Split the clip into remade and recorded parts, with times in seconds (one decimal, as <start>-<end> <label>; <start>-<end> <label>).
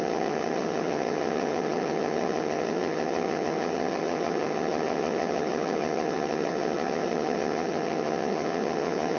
0.0-9.2 remade